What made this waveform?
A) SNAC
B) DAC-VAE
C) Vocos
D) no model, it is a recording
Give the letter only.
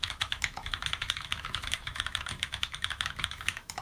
B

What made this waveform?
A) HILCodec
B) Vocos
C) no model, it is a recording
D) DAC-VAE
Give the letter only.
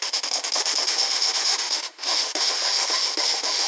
D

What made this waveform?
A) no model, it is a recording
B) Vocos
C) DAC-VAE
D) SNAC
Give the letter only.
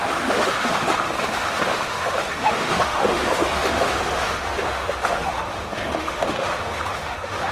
C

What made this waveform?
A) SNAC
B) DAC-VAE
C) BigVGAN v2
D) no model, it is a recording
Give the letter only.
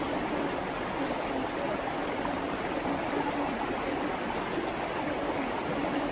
D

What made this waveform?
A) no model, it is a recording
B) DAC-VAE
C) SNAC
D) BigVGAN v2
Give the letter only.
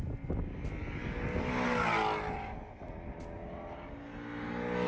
A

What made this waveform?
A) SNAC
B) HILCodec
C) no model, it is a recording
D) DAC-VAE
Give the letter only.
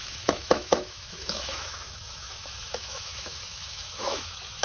D